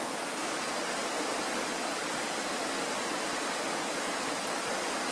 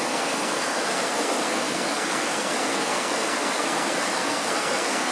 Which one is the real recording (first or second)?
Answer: first